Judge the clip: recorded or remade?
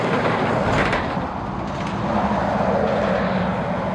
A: recorded